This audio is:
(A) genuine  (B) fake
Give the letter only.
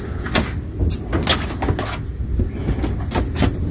A